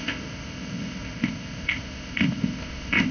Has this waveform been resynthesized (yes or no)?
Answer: yes